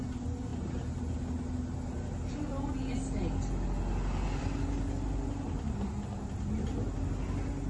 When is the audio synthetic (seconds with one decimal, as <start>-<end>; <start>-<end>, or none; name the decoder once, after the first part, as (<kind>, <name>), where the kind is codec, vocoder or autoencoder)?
none